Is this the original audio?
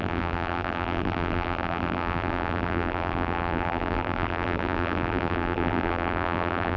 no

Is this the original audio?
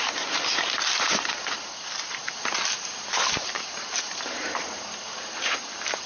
no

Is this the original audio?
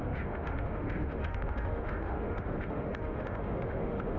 no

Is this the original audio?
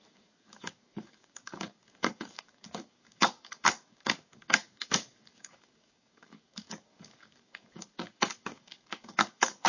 no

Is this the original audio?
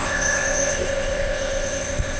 no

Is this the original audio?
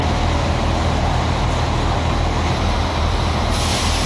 yes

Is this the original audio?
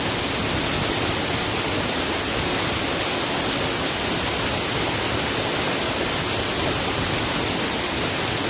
yes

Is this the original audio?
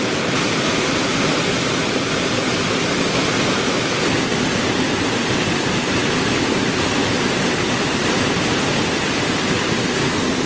no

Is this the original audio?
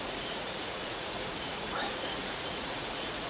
no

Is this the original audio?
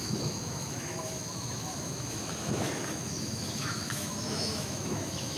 no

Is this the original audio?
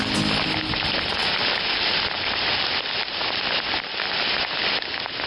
yes